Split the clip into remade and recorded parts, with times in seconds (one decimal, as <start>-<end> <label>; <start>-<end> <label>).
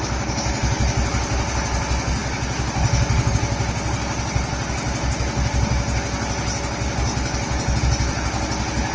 0.0-8.9 recorded